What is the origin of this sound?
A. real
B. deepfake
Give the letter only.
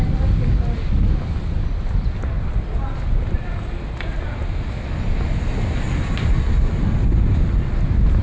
A